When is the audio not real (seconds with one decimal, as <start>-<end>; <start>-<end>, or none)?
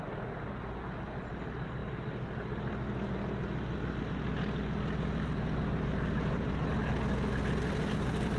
none